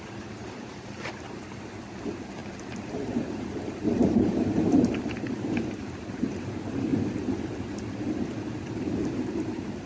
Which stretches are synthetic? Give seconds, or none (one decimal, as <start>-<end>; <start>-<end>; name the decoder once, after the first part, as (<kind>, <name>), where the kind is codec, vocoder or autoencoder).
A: 0.0-6.9 (vocoder, BigVGAN v2); 8.8-9.9